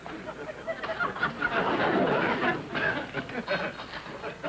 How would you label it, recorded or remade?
recorded